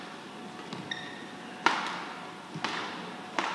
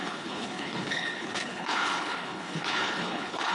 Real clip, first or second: first